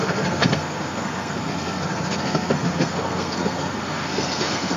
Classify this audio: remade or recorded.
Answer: remade